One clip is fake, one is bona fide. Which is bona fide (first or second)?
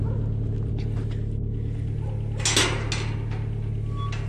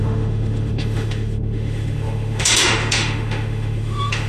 first